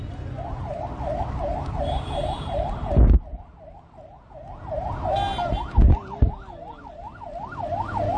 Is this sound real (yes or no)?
yes